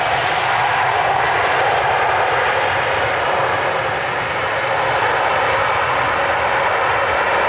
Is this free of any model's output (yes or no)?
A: yes